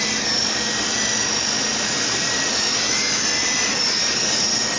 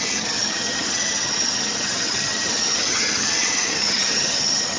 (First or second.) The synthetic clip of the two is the second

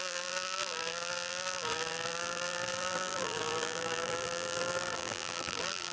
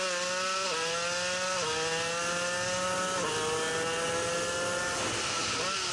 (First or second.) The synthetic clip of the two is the first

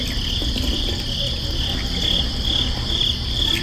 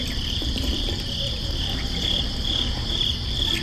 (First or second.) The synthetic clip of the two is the second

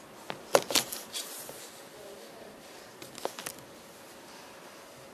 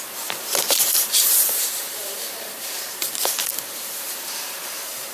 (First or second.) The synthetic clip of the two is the second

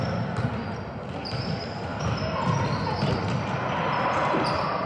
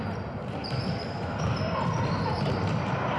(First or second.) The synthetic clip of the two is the second